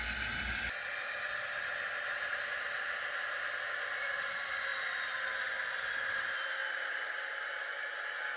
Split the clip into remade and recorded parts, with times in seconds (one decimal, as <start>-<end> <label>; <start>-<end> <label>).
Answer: 0.0-8.4 recorded